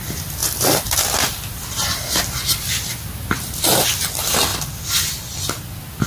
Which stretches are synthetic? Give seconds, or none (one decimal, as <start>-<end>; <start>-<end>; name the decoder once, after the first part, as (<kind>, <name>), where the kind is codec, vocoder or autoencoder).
0.4-4.1 (vocoder, BigVGAN v2)

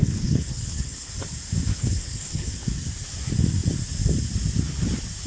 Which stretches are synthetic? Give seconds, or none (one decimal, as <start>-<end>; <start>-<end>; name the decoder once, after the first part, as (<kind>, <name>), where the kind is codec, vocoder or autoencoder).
0.0-1.1 (codec, HILCodec); 1.7-2.5

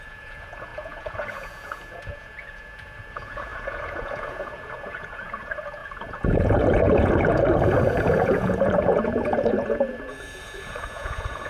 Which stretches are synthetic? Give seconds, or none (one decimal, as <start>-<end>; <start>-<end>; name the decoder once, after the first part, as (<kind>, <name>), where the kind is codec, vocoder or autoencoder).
0.0-11.5 (vocoder, Vocos)

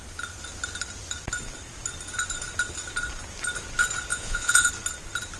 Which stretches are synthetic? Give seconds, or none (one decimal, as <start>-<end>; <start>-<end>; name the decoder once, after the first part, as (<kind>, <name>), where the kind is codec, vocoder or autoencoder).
4.1-4.7 (vocoder, Vocos)